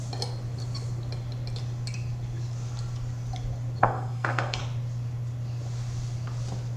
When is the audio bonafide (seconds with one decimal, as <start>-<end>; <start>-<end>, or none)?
0.0-3.8; 4.6-6.8